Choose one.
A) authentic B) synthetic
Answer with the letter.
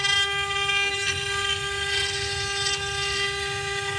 A